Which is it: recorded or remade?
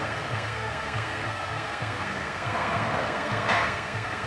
remade